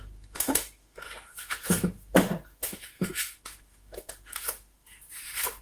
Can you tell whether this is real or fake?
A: fake